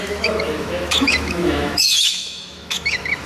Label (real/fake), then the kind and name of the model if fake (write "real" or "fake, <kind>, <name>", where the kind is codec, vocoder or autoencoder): fake, autoencoder, DAC-VAE